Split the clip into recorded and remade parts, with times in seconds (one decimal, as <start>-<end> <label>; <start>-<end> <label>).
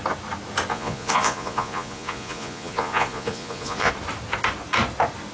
0.0-0.7 recorded; 0.7-3.9 remade; 3.9-5.3 recorded